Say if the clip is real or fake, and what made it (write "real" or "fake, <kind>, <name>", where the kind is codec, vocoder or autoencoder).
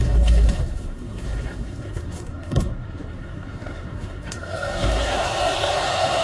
fake, codec, SNAC